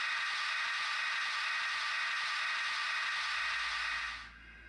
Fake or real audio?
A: real